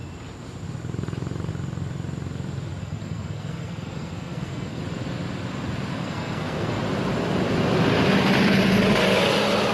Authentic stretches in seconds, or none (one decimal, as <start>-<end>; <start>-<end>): 0.0-2.8; 4.8-5.9; 6.8-9.7